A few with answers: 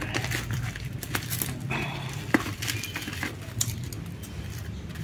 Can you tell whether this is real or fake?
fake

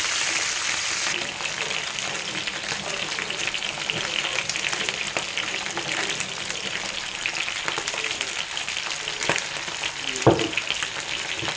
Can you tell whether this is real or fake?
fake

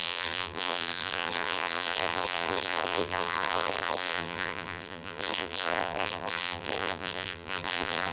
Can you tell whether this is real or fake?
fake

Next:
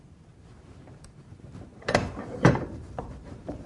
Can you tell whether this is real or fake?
fake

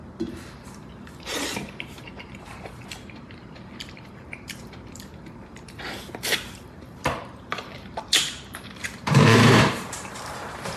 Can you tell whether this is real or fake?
fake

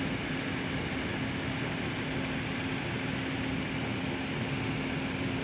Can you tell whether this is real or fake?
real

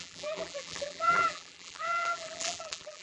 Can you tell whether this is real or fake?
fake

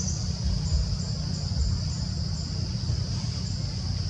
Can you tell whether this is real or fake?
real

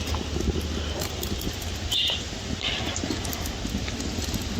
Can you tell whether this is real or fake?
real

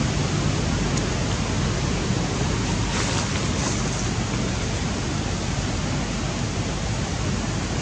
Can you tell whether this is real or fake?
real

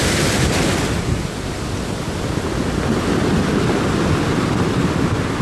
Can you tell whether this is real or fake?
real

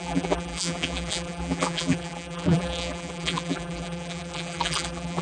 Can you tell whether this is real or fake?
fake